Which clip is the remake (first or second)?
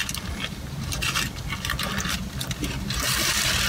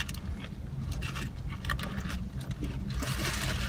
first